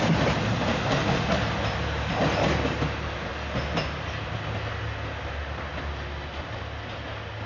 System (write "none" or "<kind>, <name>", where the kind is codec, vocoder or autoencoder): none